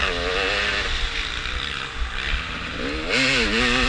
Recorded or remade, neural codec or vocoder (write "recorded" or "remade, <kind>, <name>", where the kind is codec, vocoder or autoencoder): recorded